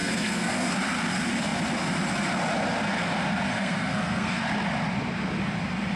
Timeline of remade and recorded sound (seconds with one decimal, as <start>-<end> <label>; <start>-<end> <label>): 0.0-0.7 remade; 0.7-3.5 recorded; 3.5-4.4 remade; 4.4-6.0 recorded